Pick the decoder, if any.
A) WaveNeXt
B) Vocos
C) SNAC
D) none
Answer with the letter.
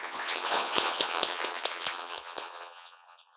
B